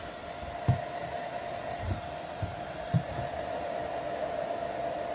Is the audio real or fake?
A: real